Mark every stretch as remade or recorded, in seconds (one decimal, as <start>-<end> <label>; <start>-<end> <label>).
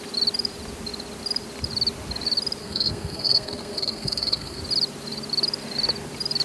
0.0-2.6 recorded; 2.6-4.6 remade; 4.6-6.4 recorded